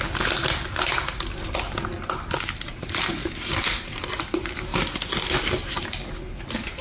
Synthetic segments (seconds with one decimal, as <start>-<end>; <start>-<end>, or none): none